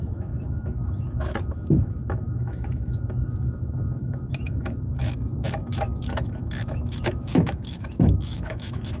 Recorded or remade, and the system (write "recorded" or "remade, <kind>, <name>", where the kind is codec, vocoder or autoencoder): remade, autoencoder, DAC-VAE